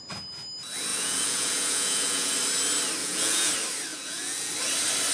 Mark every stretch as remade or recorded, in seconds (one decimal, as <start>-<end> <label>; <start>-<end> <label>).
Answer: 0.0-0.9 recorded; 0.9-2.3 remade; 2.3-3.0 recorded; 3.0-3.5 remade; 3.5-3.9 recorded; 3.9-4.5 remade; 4.5-5.1 recorded